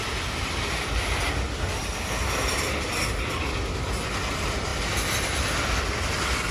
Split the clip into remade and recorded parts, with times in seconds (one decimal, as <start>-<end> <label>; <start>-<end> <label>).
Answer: 0.0-4.7 recorded; 4.7-6.5 remade